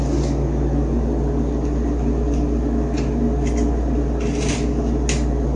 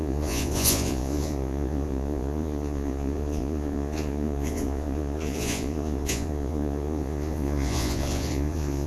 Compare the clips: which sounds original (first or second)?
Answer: first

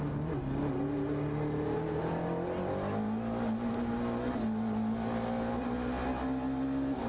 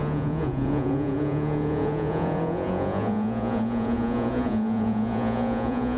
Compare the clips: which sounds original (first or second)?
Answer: first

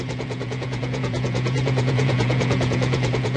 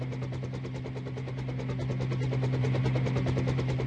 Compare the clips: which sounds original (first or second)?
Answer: second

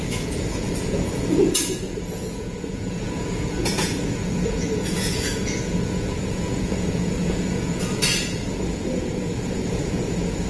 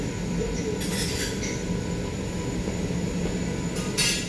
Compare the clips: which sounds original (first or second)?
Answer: second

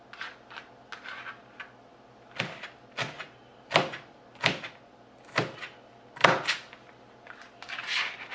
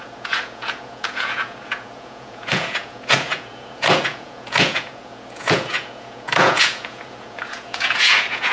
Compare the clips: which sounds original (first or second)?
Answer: first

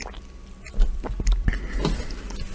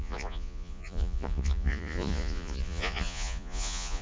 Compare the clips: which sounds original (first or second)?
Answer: first